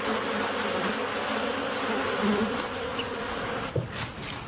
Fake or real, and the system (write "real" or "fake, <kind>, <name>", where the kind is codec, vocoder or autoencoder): real